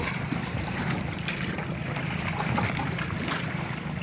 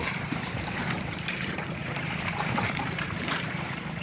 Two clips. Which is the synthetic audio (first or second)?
second